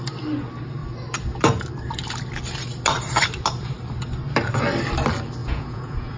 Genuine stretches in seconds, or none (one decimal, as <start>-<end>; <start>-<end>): 0.0-5.4